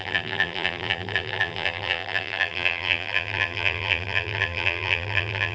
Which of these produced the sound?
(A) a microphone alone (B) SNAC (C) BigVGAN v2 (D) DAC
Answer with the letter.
C